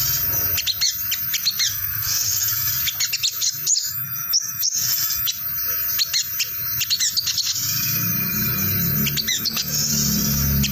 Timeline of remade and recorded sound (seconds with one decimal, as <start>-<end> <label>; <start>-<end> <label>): 0.0-1.7 recorded; 1.7-2.7 remade; 2.7-3.9 recorded; 3.9-5.3 remade; 5.3-9.3 recorded; 9.3-9.9 remade; 9.9-10.7 recorded